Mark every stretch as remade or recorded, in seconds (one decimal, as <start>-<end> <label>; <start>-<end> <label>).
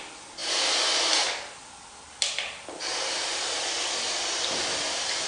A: 0.0-5.3 recorded